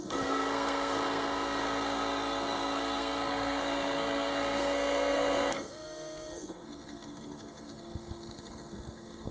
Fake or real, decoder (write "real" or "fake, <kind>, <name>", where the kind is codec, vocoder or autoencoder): fake, codec, SNAC